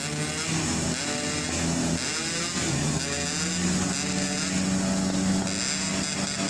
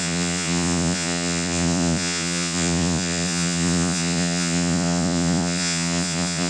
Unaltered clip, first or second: first